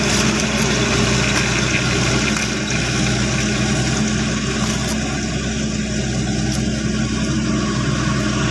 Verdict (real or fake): real